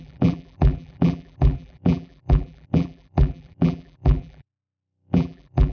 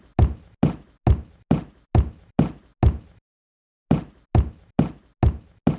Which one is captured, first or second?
second